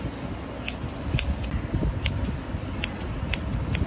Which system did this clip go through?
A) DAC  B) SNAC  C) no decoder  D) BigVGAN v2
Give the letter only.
C